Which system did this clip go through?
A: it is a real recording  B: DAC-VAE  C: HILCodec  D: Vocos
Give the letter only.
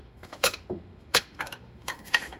B